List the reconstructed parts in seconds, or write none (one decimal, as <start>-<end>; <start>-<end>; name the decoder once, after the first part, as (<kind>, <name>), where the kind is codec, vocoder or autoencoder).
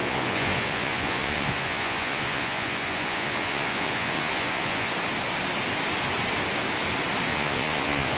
0.0-4.9 (vocoder, Vocos); 7.3-8.2